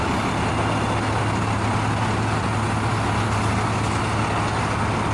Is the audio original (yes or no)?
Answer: yes